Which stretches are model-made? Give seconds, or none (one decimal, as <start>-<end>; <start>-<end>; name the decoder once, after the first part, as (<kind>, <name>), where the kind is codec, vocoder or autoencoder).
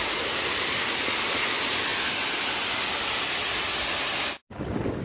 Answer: none